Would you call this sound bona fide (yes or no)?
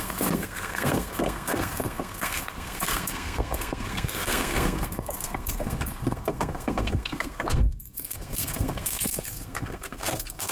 no